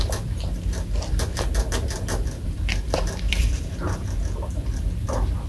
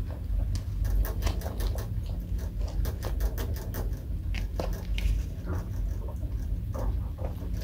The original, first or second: second